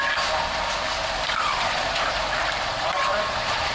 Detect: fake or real real